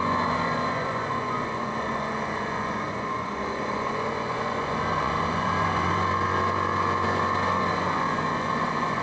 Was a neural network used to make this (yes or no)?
yes